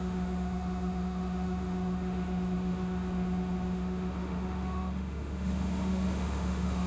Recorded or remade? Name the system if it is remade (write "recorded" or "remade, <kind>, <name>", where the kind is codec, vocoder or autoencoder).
remade, autoencoder, DAC-VAE